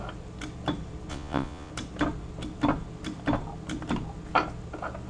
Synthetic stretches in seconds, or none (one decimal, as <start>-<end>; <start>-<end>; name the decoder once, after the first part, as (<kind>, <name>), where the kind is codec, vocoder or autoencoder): 1.1-1.7 (vocoder, Vocos)